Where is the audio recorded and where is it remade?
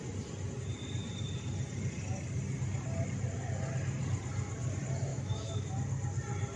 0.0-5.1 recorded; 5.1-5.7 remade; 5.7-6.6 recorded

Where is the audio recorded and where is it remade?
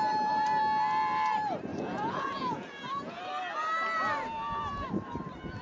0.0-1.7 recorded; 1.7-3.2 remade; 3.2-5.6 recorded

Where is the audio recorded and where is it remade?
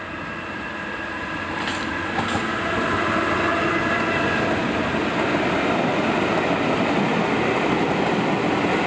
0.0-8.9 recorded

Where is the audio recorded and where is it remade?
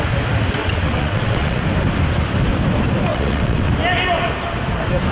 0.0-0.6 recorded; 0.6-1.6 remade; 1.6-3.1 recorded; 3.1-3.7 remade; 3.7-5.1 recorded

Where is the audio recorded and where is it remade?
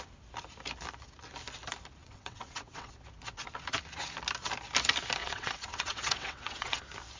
0.0-2.0 recorded; 2.0-2.9 remade; 2.9-5.2 recorded; 5.2-6.8 remade; 6.8-7.2 recorded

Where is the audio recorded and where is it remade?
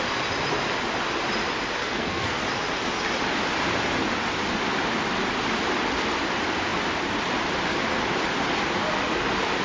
0.0-1.8 recorded; 1.8-2.4 remade; 2.4-9.6 recorded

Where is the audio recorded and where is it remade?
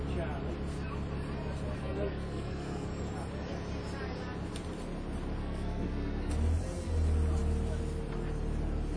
0.0-1.8 recorded; 1.8-2.9 remade; 2.9-5.4 recorded; 5.4-6.3 remade; 6.3-9.0 recorded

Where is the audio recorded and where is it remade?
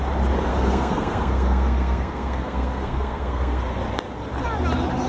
0.0-0.5 recorded; 0.5-3.6 remade; 3.6-5.1 recorded